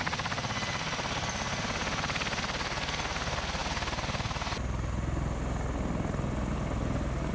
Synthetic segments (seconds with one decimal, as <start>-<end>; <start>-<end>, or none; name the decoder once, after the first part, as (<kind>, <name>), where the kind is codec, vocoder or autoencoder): none